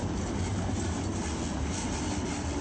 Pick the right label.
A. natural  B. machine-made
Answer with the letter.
A